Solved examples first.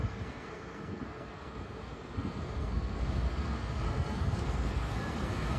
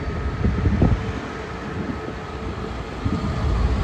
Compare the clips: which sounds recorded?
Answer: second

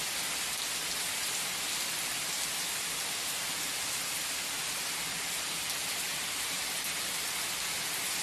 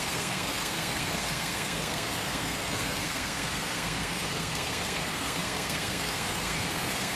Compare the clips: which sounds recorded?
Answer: first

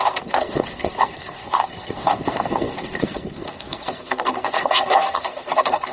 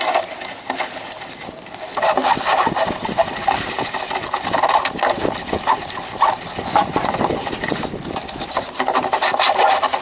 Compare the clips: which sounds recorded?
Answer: second